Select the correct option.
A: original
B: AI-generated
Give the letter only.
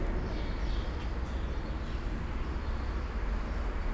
A